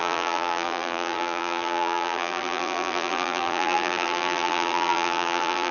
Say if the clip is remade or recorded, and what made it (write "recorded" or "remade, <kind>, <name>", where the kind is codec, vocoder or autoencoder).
remade, vocoder, BigVGAN v2